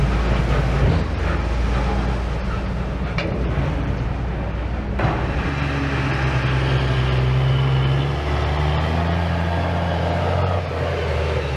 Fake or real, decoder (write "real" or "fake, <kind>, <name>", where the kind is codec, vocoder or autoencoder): real